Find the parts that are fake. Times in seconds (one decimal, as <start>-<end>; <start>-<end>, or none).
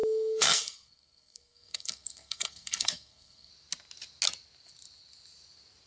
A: 0.0-3.5